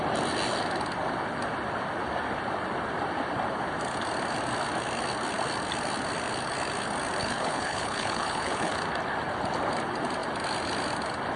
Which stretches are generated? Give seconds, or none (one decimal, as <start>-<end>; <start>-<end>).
7.2-8.7